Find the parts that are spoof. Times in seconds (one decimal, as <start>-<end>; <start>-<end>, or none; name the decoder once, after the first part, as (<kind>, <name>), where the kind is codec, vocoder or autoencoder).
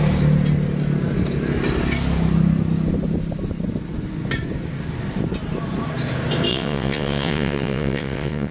6.5-8.5 (vocoder, WaveNeXt)